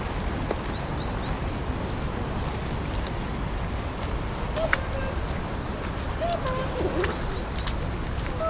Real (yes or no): yes